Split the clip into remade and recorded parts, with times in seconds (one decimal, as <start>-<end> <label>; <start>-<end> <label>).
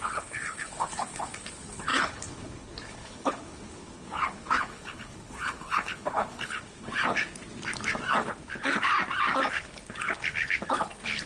0.0-7.4 remade; 7.4-8.1 recorded; 8.1-8.9 remade; 8.9-9.5 recorded; 9.5-11.3 remade